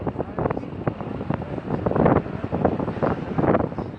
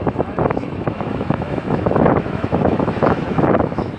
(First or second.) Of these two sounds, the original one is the first